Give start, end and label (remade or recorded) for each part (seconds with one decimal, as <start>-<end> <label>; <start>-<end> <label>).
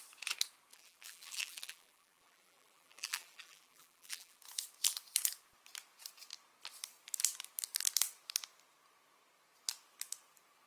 0.0-0.7 recorded; 0.7-4.4 remade; 4.4-10.7 recorded